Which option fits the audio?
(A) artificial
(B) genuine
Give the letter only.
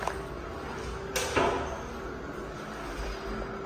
B